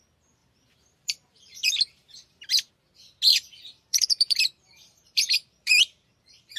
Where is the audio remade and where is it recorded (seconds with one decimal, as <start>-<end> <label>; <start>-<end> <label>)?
0.0-0.4 recorded; 0.4-2.7 remade; 2.7-3.3 recorded; 3.3-6.6 remade